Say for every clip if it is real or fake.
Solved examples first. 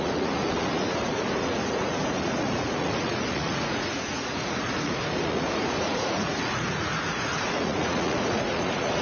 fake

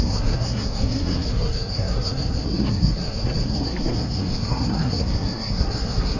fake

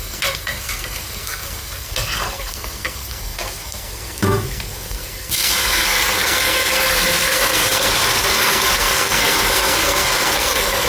fake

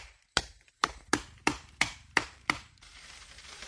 fake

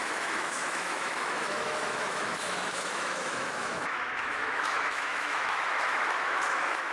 fake